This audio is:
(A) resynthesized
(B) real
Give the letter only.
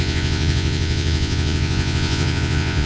A